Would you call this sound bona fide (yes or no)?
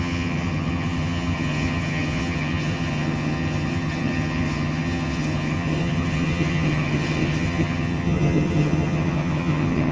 no